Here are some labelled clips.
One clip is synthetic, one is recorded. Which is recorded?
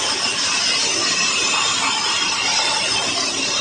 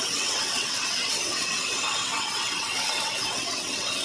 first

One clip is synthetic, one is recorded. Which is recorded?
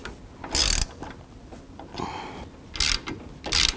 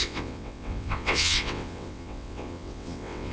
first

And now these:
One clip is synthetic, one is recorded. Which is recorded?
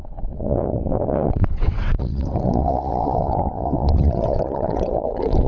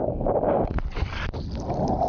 second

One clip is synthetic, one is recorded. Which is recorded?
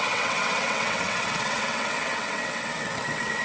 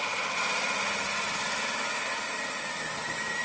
second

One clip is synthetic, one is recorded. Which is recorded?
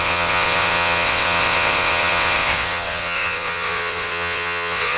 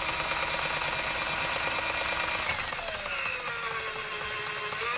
second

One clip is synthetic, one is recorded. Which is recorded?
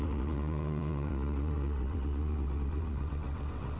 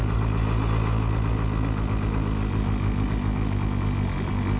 second